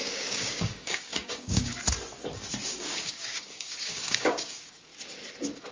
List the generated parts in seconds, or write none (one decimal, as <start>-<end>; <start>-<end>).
0.0-1.7; 2.7-4.9